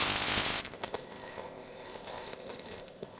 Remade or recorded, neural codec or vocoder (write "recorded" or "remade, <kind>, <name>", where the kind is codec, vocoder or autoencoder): remade, codec, ZipCodec